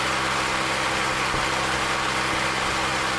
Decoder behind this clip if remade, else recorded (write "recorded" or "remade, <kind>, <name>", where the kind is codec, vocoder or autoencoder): recorded